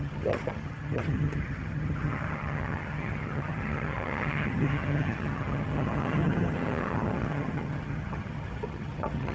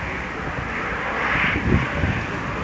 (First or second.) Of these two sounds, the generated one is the first